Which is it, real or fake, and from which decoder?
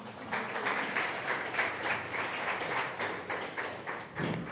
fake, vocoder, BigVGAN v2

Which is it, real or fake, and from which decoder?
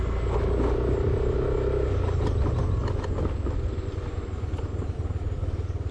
real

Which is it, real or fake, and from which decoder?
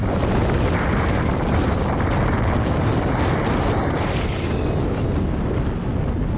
real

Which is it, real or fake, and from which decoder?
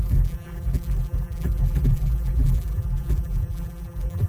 fake, vocoder, BigVGAN v2